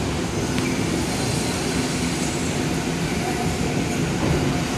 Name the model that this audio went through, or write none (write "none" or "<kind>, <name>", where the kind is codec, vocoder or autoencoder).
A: none